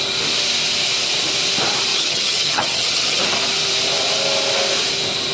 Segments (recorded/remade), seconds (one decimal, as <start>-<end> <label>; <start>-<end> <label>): 0.0-1.9 recorded; 1.9-3.2 remade; 3.2-5.3 recorded